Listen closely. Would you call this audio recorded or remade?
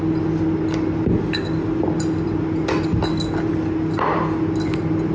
recorded